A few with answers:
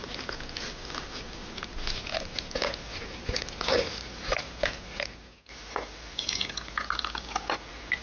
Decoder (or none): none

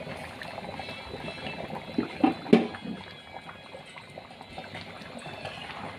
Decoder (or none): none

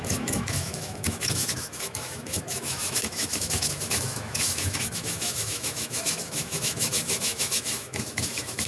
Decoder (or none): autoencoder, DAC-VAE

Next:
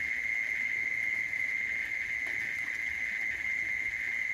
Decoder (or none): none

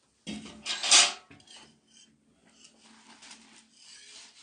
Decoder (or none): none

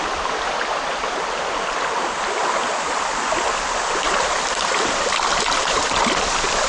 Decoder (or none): none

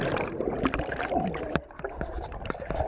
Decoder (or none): none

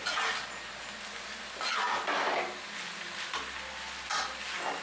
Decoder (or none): none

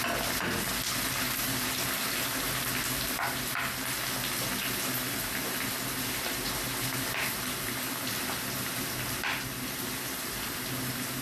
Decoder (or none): none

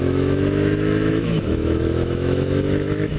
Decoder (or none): autoencoder, DAC-VAE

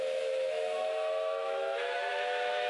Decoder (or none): autoencoder, DAC-VAE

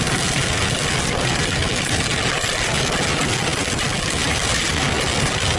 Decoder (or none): none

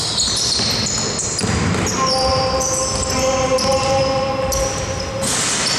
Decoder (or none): none